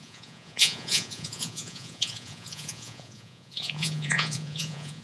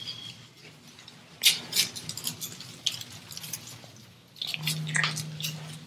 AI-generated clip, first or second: first